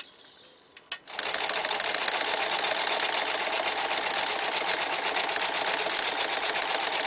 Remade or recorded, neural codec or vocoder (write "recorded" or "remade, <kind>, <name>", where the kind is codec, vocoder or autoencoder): recorded